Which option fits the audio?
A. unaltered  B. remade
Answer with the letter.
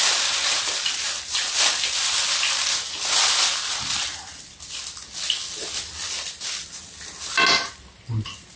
A